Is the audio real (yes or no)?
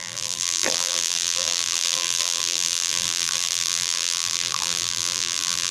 no